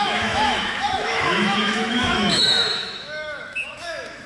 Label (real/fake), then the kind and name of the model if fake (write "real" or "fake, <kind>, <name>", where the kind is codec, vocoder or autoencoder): fake, autoencoder, DAC-VAE